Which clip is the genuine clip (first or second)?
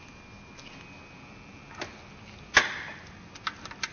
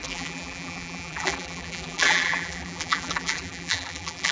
first